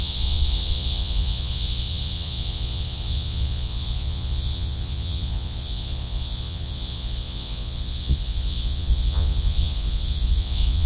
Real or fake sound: fake